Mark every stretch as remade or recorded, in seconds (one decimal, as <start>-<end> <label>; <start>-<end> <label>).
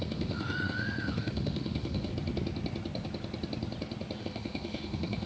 0.0-2.1 remade; 2.1-4.2 recorded; 4.2-5.3 remade